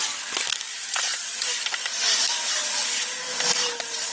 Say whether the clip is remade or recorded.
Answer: recorded